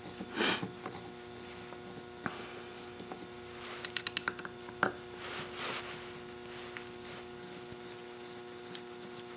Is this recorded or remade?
recorded